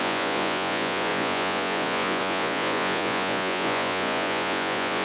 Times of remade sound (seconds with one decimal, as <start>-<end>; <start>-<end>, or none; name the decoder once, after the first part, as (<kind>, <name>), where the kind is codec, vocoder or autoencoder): 0.0-5.0 (vocoder, Vocos)